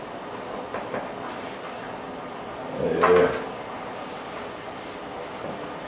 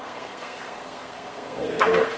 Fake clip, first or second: second